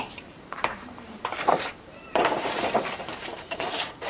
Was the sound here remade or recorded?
remade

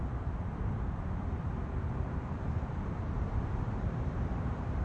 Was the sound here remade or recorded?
remade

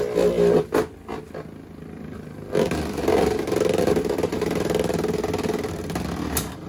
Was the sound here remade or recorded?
recorded